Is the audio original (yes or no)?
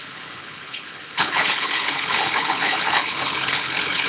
no